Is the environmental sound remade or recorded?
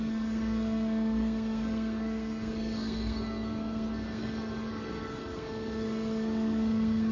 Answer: remade